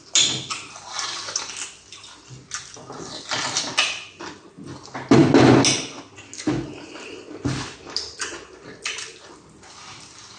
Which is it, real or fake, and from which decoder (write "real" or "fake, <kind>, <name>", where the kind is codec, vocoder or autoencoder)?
real